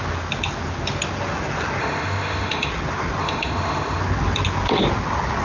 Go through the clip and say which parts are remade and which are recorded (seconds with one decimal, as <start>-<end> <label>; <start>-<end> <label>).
0.0-1.8 recorded; 1.8-2.7 remade; 2.7-3.2 recorded; 3.2-4.0 remade; 4.0-5.4 recorded